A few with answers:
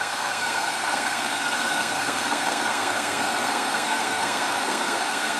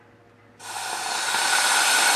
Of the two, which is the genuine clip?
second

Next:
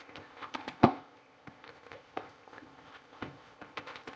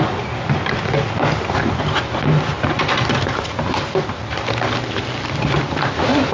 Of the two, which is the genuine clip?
second